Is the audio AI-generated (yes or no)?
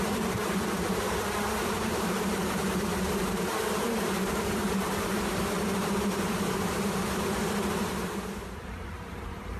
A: yes